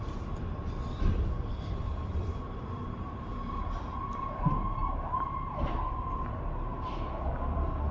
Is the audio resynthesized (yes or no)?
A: yes